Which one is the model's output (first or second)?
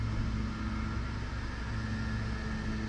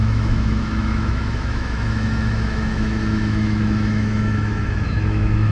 second